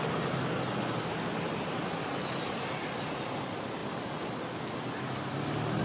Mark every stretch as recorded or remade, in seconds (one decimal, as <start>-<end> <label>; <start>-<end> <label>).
0.0-5.8 recorded